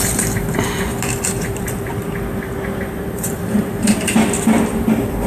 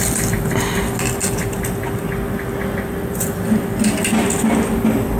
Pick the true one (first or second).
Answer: second